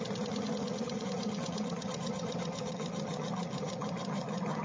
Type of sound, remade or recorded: remade